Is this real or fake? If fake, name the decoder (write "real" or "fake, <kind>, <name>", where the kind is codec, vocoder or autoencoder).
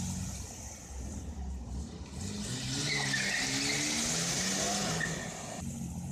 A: real